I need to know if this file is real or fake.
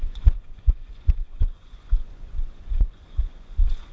fake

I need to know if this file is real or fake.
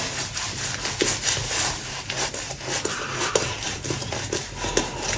real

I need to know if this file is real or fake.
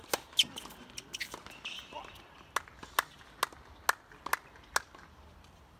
real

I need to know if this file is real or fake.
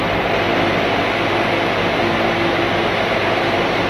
real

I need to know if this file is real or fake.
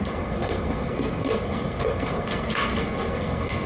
fake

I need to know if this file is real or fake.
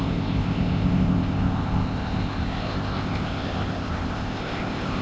fake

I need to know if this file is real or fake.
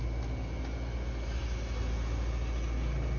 real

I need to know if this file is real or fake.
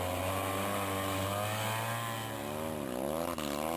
real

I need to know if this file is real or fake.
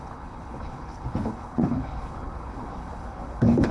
fake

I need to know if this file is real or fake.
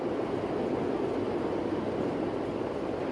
real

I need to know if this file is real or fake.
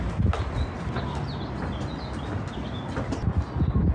real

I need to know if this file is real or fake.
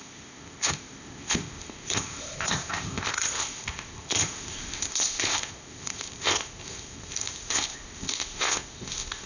fake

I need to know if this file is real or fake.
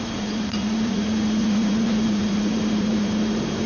fake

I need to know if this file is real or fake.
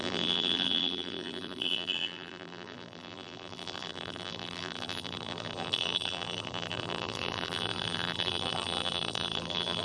fake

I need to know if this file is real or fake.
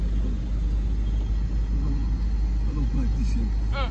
real